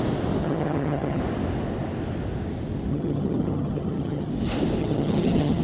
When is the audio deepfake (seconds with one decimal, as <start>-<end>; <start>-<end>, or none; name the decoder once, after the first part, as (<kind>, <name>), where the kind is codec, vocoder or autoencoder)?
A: 0.4-1.2 (vocoder, HiFi-GAN); 2.9-4.3; 4.8-5.6